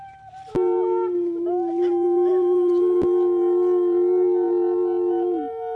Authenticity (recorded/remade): recorded